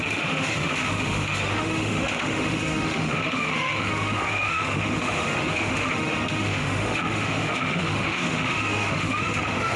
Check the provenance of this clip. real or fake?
fake